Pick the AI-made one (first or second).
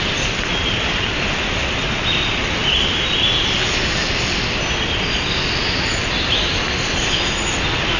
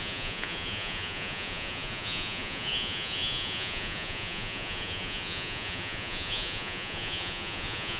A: second